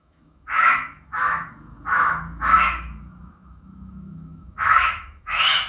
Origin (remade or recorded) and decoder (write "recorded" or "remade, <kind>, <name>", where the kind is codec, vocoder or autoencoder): remade, autoencoder, DAC-VAE